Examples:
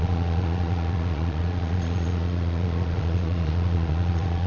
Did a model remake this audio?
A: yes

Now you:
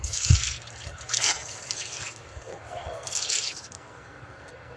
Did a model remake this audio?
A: yes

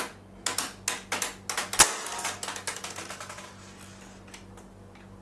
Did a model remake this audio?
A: no